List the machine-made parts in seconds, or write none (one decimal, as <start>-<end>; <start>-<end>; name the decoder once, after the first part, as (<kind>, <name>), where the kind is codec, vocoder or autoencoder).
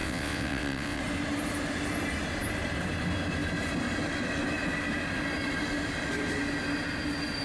0.0-1.0 (vocoder, WaveNeXt)